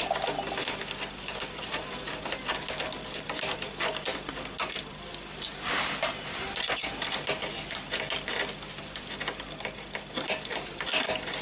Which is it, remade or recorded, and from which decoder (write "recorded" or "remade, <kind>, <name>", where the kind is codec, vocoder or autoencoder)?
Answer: recorded